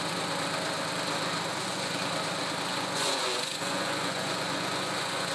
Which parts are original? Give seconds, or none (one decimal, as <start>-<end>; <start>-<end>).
0.0-1.5; 2.1-2.7